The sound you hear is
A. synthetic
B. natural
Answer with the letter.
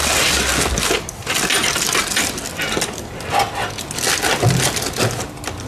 B